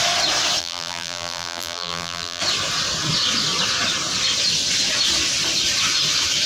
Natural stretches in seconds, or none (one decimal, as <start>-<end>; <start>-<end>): 0.0-0.6; 2.4-6.5